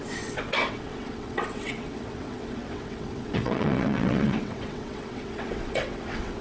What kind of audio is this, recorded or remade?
remade